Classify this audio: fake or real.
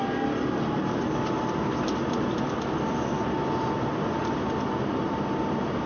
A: real